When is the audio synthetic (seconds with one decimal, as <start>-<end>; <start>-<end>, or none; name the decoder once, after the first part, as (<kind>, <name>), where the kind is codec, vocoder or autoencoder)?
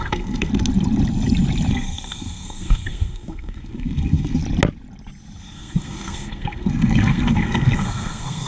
0.0-0.5 (codec, SNAC); 1.7-4.4; 5.4-8.5